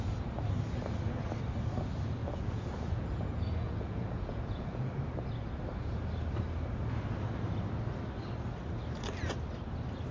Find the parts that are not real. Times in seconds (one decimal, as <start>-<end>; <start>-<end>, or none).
2.2-4.9